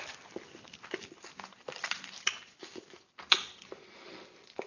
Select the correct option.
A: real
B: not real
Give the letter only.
A